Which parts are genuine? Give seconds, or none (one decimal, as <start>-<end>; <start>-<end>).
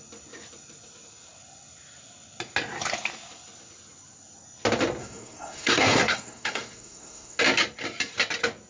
0.0-5.0; 7.4-8.7